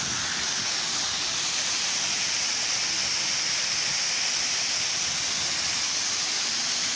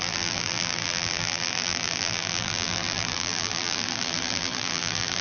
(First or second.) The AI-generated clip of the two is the second